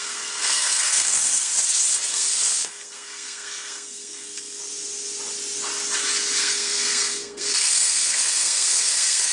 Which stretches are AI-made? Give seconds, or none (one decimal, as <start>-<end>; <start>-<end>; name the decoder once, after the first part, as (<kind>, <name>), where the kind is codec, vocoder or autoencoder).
0.0-1.5 (codec, SNAC); 2.1-4.7; 6.4-9.3

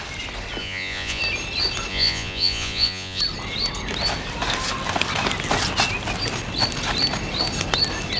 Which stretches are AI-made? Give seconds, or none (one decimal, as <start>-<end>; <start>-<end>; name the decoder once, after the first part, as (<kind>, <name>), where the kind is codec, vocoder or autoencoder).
0.6-1.2 (vocoder, Vocos); 1.9-3.2